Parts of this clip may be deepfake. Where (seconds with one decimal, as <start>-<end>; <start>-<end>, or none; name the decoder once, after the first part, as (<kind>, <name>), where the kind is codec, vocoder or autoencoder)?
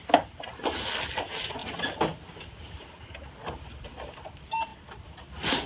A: none